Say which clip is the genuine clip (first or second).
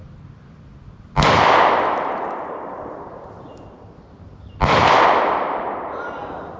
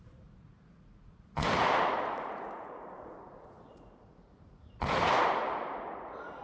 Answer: first